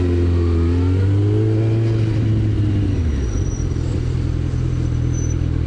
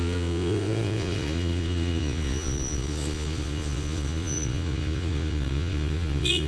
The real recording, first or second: first